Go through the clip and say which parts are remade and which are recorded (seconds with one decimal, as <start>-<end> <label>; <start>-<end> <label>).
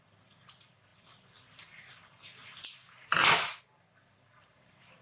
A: 0.0-2.8 recorded; 2.8-3.3 remade; 3.3-5.0 recorded